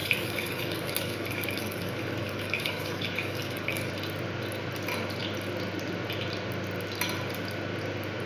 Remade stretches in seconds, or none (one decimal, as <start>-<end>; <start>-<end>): 0.0-3.9